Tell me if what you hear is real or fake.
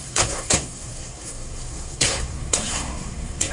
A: fake